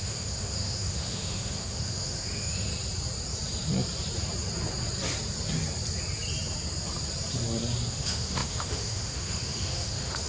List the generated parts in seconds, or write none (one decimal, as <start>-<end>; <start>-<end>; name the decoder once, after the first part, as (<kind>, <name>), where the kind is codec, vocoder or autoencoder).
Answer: 0.0-2.7 (autoencoder, DAC-VAE); 7.9-10.3